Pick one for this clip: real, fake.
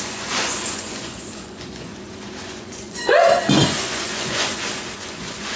fake